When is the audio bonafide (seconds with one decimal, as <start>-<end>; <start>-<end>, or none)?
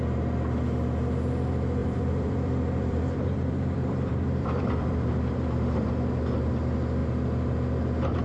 0.0-1.8; 5.9-8.2